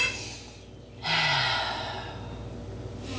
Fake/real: real